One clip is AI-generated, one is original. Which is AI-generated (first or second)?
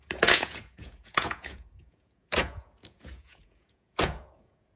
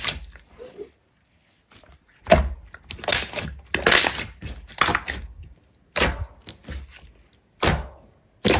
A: first